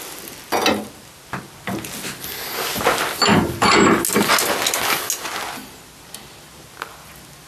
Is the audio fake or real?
real